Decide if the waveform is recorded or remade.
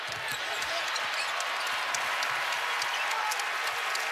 recorded